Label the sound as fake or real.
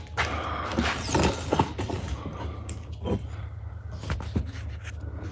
real